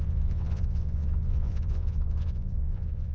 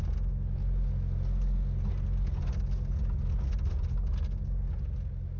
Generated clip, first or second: first